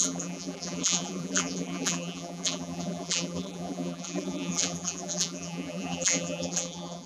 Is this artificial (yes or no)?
yes